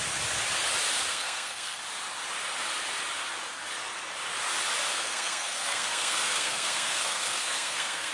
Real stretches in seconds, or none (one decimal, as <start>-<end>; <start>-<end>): 0.0-1.1; 1.8-4.9

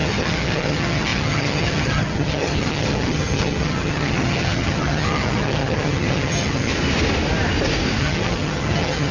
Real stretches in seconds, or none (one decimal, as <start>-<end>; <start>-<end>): 6.7-8.0

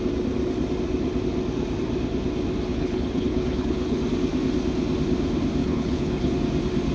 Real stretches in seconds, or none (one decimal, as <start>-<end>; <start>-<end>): 0.0-2.7; 4.0-5.6; 6.3-6.9